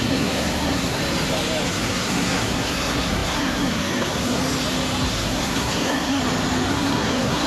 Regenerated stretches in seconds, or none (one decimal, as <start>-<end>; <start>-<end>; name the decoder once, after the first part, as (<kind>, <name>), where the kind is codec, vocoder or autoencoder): 0.0-1.0 (codec, SNAC); 1.7-4.4; 5.1-6.2; 6.7-7.5